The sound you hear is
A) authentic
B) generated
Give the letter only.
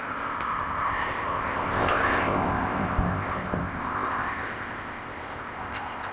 B